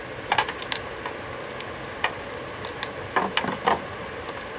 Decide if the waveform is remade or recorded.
recorded